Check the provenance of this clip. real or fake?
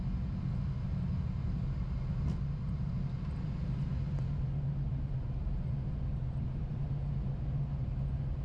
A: real